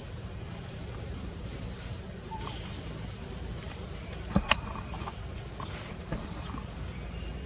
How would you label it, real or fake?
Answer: fake